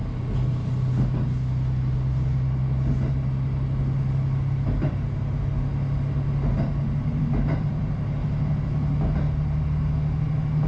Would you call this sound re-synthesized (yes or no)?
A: no